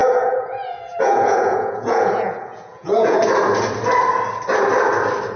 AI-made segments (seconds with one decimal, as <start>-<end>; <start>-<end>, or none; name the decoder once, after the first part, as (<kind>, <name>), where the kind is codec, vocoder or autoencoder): 0.0-3.2 (vocoder, Vocos)